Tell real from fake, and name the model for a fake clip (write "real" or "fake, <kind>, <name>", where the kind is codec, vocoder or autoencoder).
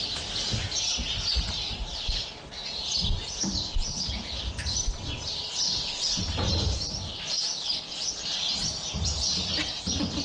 real